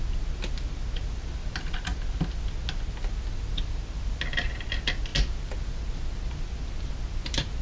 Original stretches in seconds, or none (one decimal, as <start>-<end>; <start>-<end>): 0.0-7.6

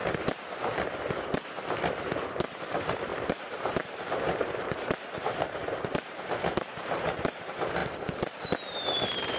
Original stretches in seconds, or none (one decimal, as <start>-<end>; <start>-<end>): 0.0-2.5